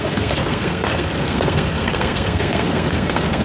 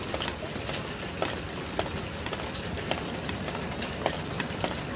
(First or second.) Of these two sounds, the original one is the second